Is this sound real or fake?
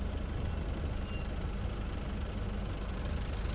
real